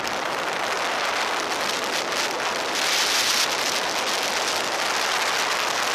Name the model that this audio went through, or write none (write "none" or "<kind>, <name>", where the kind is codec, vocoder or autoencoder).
none